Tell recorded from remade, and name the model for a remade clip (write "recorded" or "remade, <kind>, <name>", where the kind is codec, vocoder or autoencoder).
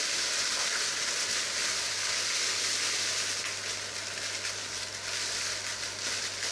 recorded